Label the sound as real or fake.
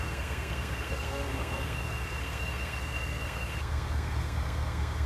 fake